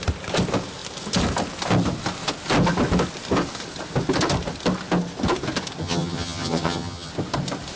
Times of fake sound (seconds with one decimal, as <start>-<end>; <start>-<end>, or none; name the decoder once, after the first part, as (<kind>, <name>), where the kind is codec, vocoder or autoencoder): 5.8-7.1 (vocoder, HiFi-GAN)